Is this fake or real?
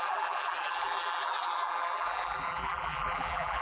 fake